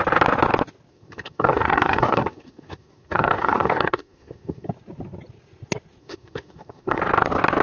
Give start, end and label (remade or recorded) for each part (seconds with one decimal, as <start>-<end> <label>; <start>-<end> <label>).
0.0-0.9 recorded; 0.9-4.7 remade; 4.7-6.0 recorded; 6.0-7.0 remade; 7.0-7.6 recorded